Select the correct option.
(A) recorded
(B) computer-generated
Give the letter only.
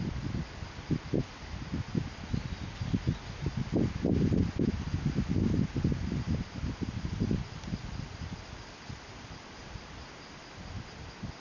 A